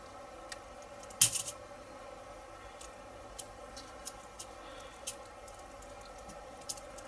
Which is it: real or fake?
real